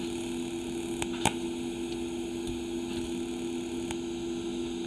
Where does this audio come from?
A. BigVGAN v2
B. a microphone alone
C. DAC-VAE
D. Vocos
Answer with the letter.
B